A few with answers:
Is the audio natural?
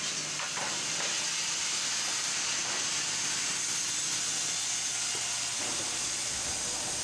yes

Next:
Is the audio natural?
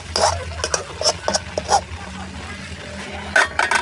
yes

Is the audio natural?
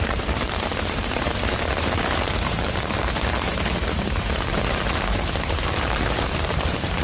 no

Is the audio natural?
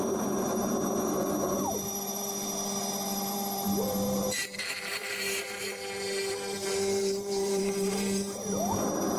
no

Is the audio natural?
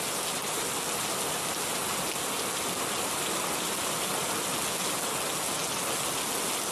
yes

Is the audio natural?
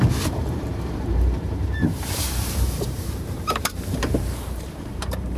no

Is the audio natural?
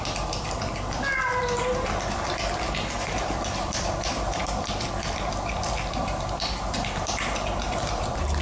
no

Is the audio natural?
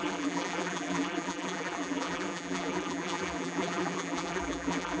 no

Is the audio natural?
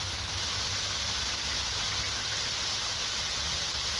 yes